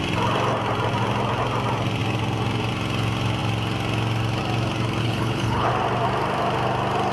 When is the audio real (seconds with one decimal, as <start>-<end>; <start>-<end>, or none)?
0.0-5.0; 5.7-7.1